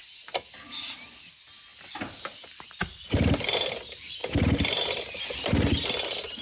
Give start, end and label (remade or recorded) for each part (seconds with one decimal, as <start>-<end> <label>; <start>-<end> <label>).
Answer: 0.0-6.4 recorded